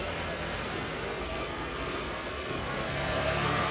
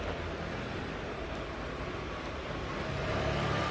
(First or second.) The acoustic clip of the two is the second